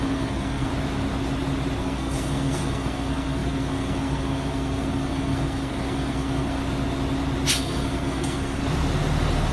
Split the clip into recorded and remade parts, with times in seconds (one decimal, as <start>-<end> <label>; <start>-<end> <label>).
0.0-0.7 remade; 0.7-1.8 recorded; 1.8-6.6 remade; 6.6-7.5 recorded; 7.5-8.6 remade; 8.6-9.5 recorded